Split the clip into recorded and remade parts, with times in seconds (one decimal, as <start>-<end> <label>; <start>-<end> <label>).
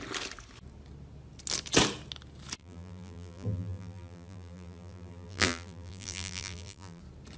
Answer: 0.0-2.6 recorded; 2.6-7.0 remade; 7.0-7.4 recorded